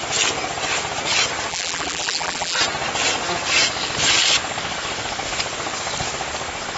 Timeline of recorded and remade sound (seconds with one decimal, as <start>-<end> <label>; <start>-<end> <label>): 0.0-1.5 recorded; 1.5-2.6 remade; 2.6-6.8 recorded